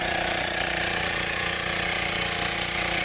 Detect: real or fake fake